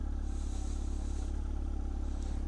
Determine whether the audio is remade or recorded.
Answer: recorded